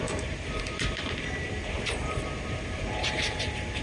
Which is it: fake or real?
fake